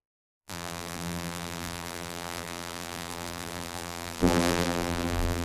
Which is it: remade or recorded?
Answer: remade